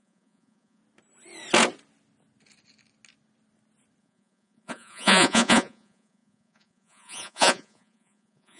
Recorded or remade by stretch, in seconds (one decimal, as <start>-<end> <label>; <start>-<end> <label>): 0.0-0.8 remade; 0.8-4.0 recorded; 4.0-8.6 remade